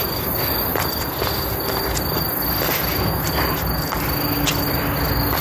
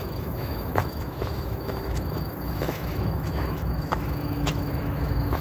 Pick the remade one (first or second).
second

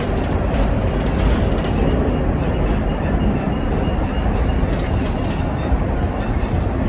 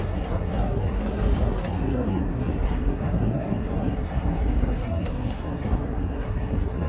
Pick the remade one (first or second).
second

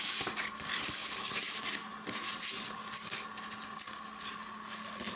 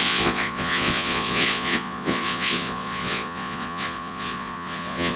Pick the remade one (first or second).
second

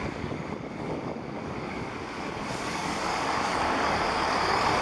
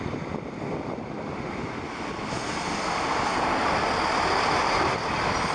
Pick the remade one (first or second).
first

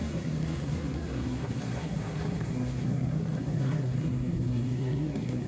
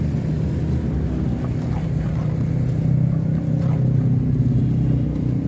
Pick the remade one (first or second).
first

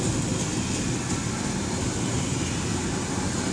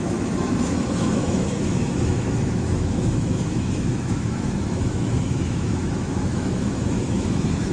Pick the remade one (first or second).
second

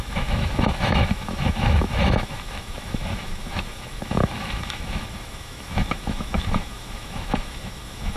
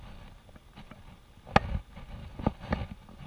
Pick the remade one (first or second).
first